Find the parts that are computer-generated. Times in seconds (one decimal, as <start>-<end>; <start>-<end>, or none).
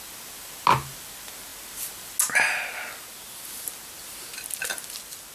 none